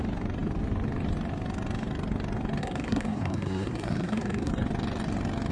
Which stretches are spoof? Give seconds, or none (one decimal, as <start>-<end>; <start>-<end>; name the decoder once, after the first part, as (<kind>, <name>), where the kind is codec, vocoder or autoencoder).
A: 2.6-4.5 (codec, SNAC)

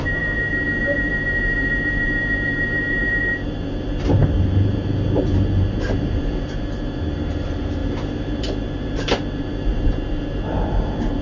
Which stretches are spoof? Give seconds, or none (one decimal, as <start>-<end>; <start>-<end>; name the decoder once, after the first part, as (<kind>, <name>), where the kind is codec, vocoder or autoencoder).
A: 0.0-11.2 (vocoder, BigVGAN v2)

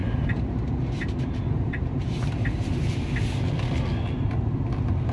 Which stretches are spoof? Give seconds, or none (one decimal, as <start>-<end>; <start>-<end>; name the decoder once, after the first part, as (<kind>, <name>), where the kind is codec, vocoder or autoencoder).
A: 0.0-3.0 (vocoder, BigVGAN v2)